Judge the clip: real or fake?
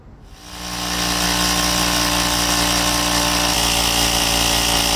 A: real